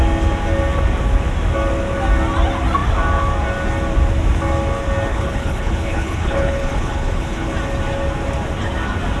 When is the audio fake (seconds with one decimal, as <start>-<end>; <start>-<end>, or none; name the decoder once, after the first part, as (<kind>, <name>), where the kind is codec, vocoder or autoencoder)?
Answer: 5.1-7.5 (codec, HILCodec)